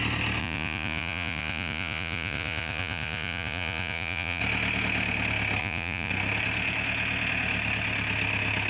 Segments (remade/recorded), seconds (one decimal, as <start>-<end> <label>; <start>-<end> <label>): 0.0-0.4 recorded; 0.4-4.4 remade; 4.4-5.6 recorded; 5.6-6.1 remade; 6.1-8.7 recorded